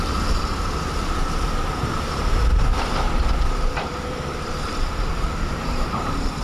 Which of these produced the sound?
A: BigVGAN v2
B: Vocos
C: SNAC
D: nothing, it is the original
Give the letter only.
A